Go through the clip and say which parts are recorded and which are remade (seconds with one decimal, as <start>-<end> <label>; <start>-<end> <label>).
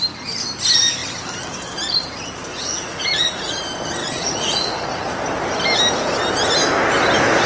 0.0-2.5 recorded; 2.5-3.6 remade; 3.6-4.0 recorded; 4.0-5.1 remade; 5.1-7.5 recorded